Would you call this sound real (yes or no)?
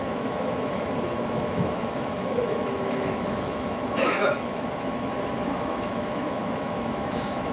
no